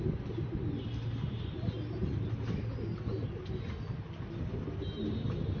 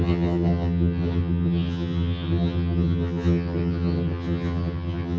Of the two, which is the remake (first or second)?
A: second